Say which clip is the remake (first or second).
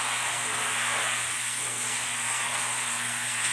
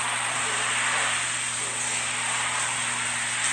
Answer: first